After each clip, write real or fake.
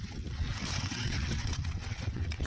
fake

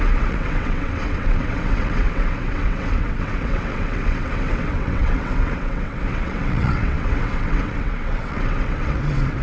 fake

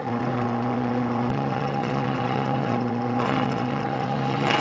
fake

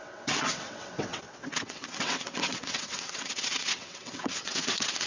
fake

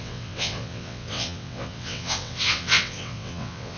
fake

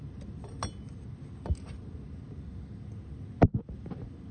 real